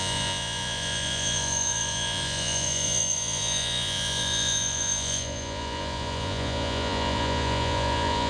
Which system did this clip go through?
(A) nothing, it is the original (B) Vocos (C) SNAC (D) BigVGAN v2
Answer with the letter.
B